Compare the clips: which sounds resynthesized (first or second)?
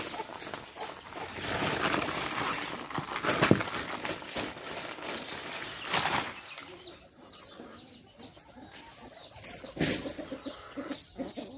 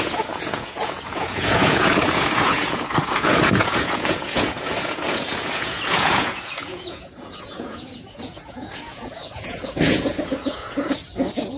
second